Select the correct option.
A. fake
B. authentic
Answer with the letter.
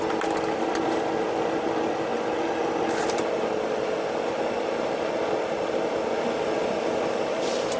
B